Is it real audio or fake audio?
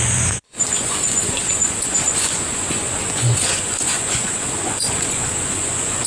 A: fake